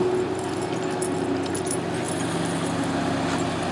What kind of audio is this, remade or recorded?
recorded